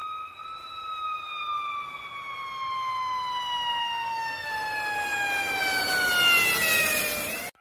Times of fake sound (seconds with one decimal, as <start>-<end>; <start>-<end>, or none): 3.8-4.5